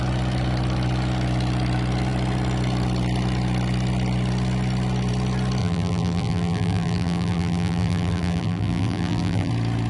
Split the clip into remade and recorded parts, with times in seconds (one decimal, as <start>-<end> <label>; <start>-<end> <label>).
0.0-5.6 recorded; 5.6-9.5 remade; 9.5-9.9 recorded